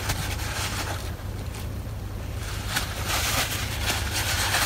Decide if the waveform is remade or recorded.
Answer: remade